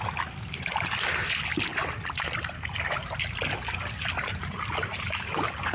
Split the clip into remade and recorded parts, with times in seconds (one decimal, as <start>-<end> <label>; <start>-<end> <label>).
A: 0.0-5.7 recorded